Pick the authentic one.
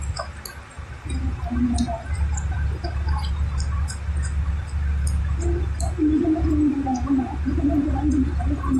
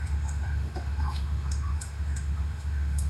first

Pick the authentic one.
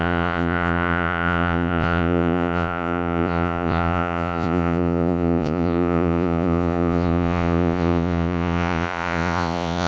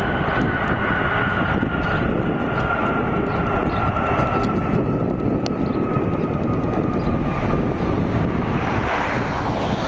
second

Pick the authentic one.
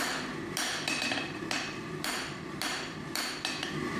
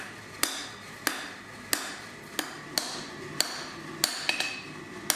second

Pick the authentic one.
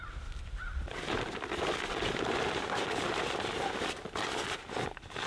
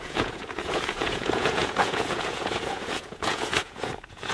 first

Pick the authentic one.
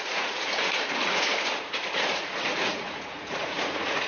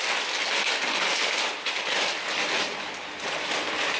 second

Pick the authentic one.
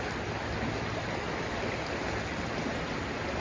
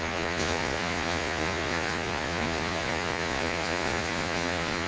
first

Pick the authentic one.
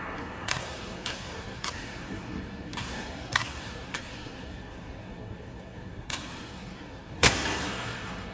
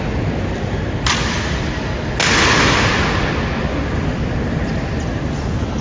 second